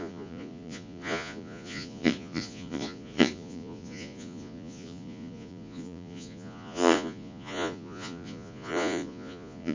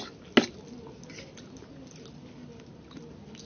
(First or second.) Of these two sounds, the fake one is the first